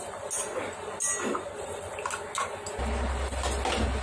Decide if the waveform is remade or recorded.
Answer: recorded